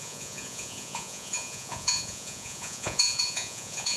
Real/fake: fake